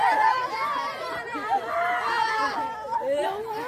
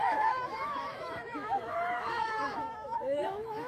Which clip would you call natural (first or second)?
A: first